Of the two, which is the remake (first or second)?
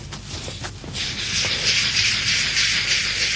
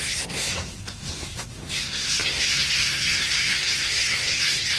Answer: second